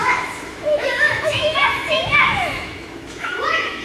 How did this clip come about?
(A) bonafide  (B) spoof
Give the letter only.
B